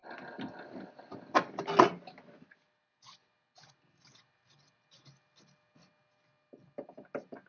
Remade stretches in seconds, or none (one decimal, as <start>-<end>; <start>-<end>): none